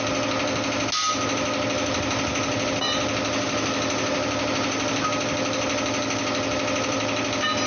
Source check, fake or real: real